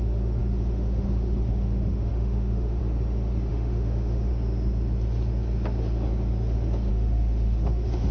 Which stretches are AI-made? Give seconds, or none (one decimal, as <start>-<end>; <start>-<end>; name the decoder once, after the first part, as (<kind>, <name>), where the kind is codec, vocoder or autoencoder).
0.0-2.8 (autoencoder, DAC-VAE); 3.5-4.3; 6.9-8.1

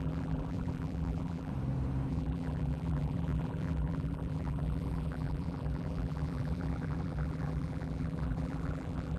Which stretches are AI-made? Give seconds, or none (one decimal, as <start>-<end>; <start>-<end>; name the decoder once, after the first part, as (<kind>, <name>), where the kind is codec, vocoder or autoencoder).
0.0-1.5 (vocoder, BigVGAN v2); 2.1-9.2

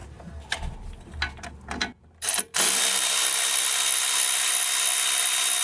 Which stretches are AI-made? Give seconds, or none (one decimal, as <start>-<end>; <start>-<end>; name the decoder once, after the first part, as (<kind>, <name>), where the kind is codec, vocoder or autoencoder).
none

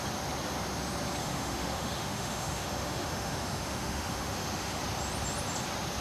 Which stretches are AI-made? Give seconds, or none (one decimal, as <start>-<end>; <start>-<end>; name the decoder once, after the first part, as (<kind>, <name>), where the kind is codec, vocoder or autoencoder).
1.2-4.8 (autoencoder, DAC-VAE)